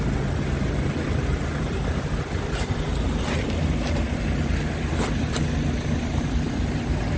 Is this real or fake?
real